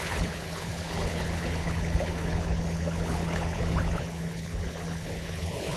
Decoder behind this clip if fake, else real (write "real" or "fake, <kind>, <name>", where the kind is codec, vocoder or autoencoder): fake, codec, HILCodec